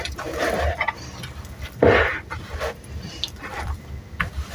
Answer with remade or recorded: recorded